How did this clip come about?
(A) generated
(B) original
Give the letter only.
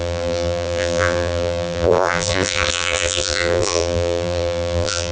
A